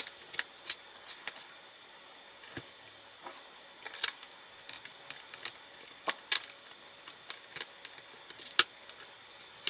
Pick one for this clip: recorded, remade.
recorded